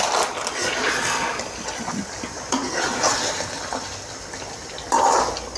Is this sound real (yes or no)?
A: yes